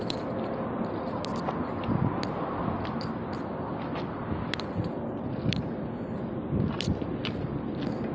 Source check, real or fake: real